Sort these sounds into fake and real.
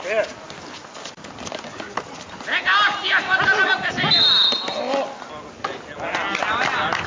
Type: real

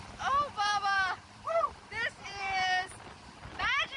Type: fake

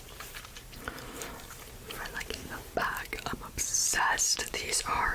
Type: fake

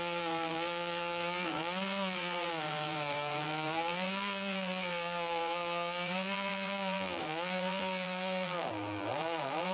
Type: fake